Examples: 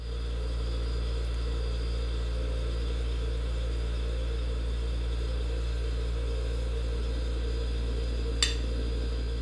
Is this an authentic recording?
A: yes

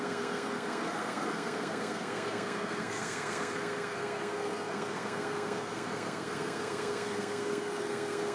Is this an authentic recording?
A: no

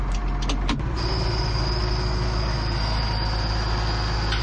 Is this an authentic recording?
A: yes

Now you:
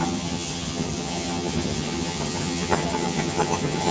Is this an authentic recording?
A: no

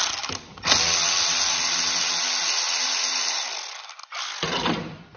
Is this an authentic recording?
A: yes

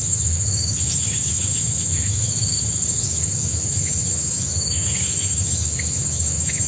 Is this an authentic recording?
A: no